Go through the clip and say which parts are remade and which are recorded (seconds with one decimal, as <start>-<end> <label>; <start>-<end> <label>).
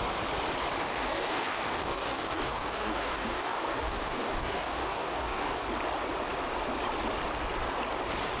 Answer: 0.0-0.8 recorded; 0.8-5.6 remade; 5.6-8.4 recorded